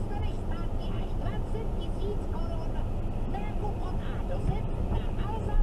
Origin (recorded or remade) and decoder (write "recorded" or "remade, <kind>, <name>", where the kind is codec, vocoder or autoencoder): recorded